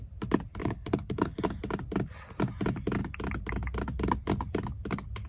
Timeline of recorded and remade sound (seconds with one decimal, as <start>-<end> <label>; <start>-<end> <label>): 0.0-0.6 recorded; 0.6-1.4 remade; 1.4-5.3 recorded